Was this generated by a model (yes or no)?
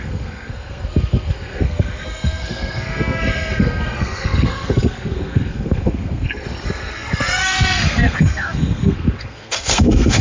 yes